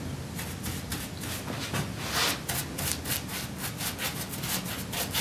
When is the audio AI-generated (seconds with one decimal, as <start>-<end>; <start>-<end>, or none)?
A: none